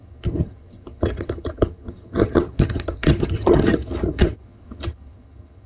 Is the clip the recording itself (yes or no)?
no